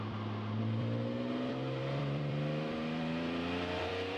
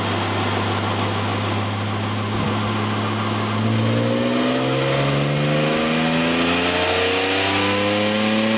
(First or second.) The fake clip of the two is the first